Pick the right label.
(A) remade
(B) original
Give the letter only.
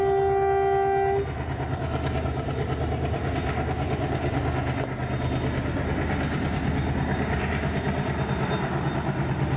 B